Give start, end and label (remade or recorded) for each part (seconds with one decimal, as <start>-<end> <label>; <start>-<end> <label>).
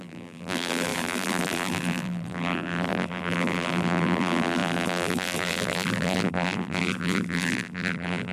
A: 0.0-8.3 remade